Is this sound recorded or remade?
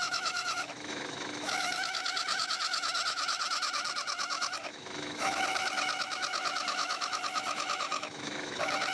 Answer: remade